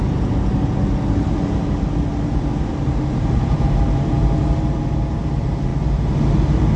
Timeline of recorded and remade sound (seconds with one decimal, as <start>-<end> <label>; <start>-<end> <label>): 0.0-2.7 recorded; 2.7-5.2 remade; 5.2-6.8 recorded

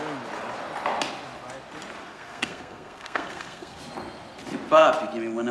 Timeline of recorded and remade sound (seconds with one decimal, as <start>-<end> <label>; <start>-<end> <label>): 0.0-2.0 recorded; 2.0-3.8 remade; 3.8-5.5 recorded

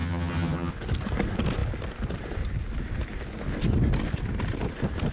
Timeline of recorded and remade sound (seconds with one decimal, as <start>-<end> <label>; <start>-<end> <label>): 0.0-0.7 remade; 0.7-5.1 recorded

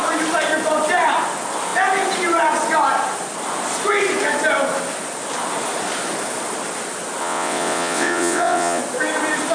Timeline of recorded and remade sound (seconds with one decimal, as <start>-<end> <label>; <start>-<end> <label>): 0.0-7.2 recorded; 7.2-8.8 remade; 8.8-9.5 recorded

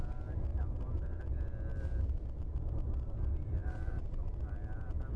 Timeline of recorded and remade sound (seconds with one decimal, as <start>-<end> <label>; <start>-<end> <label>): 0.0-0.5 recorded; 0.5-1.2 remade; 1.2-3.6 recorded; 3.6-4.4 remade; 4.4-5.2 recorded

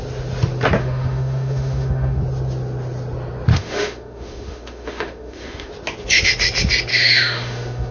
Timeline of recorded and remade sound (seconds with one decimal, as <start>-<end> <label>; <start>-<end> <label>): 0.0-0.8 recorded; 0.8-2.2 remade; 2.2-3.5 recorded; 3.5-5.7 remade; 5.7-6.9 recorded; 6.9-7.9 remade

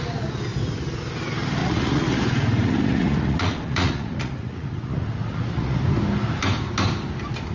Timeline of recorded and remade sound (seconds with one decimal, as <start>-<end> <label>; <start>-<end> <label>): 0.0-1.6 recorded; 1.6-5.8 remade; 5.8-7.5 recorded

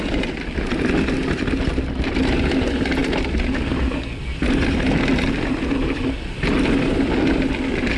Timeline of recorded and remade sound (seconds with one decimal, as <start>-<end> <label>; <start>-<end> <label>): 0.0-8.0 recorded